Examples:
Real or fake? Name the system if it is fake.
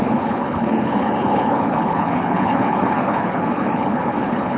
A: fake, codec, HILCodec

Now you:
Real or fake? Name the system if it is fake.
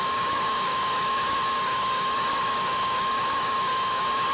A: fake, codec, DAC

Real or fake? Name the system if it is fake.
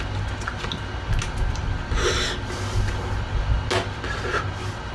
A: real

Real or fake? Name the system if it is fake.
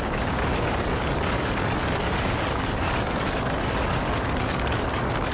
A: fake, codec, DAC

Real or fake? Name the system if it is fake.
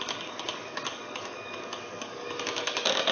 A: fake, codec, DAC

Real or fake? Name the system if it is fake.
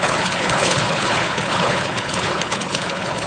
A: fake, codec, HILCodec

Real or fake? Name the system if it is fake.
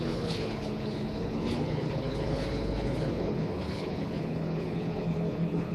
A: fake, codec, HILCodec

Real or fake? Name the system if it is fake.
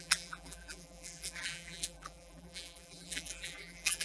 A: fake, vocoder, BigVGAN v2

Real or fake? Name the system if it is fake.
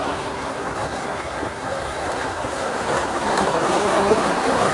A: fake, codec, SNAC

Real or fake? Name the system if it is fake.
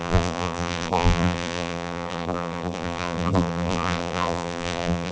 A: fake, vocoder, BigVGAN v2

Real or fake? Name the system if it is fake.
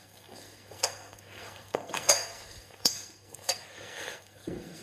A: fake, codec, SNAC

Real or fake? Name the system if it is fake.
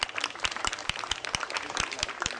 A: fake, vocoder, BigVGAN v2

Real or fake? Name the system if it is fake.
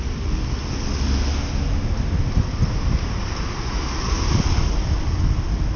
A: real